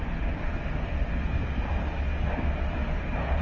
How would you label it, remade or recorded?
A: recorded